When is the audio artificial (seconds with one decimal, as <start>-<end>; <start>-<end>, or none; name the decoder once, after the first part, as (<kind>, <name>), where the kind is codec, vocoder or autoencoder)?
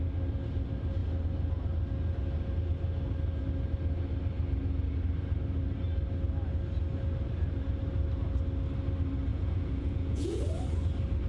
9.3-10.4 (vocoder, Vocos)